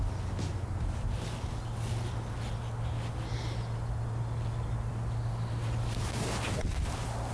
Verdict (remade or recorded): recorded